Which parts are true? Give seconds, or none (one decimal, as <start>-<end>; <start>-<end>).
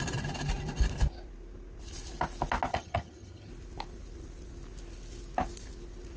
0.0-2.7; 3.5-6.2